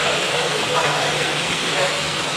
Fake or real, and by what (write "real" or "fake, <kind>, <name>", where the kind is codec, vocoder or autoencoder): fake, codec, SNAC